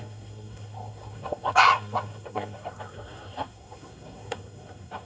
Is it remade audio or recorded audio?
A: remade